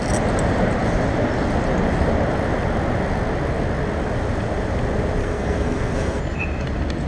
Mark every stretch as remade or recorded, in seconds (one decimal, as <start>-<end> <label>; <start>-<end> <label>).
0.0-5.2 recorded; 5.2-6.2 remade; 6.2-7.1 recorded